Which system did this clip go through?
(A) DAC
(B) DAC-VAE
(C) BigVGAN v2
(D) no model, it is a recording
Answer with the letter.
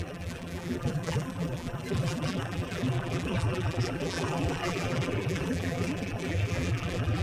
C